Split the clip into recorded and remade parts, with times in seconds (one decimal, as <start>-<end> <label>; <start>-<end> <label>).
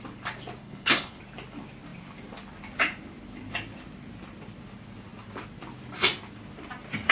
0.0-0.6 recorded; 0.6-1.2 remade; 1.2-7.1 recorded